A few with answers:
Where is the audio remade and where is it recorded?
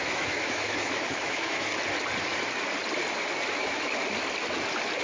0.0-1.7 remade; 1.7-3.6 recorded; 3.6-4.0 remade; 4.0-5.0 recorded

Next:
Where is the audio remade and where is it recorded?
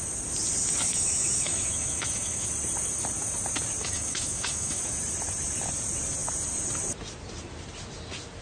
0.0-0.9 recorded; 0.9-2.5 remade; 2.5-3.8 recorded; 3.8-4.8 remade; 4.8-8.4 recorded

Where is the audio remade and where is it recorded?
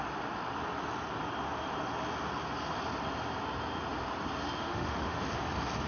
0.0-4.6 recorded; 4.6-5.2 remade; 5.2-5.9 recorded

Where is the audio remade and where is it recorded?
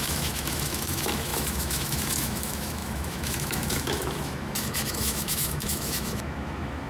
0.0-6.9 remade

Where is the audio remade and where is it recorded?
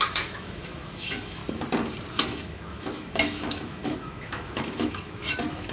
0.0-1.4 remade; 1.4-2.1 recorded; 2.1-5.7 remade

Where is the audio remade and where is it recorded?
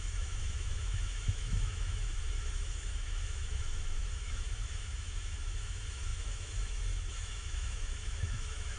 0.0-8.8 remade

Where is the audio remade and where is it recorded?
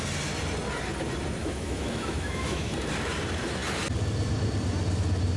0.0-1.4 recorded; 1.4-2.7 remade; 2.7-5.4 recorded